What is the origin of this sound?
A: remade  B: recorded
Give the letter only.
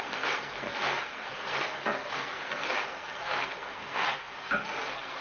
A